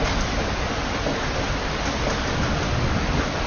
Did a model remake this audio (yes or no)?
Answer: no